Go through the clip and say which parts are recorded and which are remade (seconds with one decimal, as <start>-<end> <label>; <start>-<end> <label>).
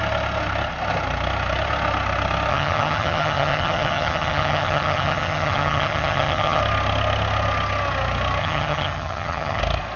0.0-2.5 recorded; 2.5-6.6 remade; 6.6-8.4 recorded; 8.4-9.6 remade; 9.6-10.0 recorded